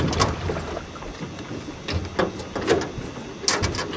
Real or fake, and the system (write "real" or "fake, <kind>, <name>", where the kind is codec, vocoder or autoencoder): real